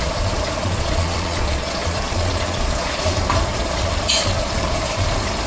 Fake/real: fake